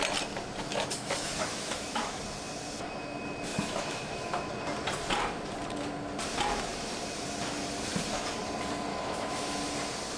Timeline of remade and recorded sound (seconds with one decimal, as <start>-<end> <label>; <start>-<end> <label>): 0.0-0.7 recorded; 0.7-2.2 remade; 2.2-3.5 recorded; 3.5-4.5 remade; 4.5-8.9 recorded; 8.9-9.6 remade; 9.6-10.2 recorded